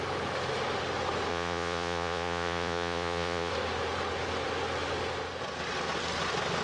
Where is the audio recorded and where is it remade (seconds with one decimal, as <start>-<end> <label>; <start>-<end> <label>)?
0.0-1.3 recorded; 1.3-3.5 remade; 3.5-6.6 recorded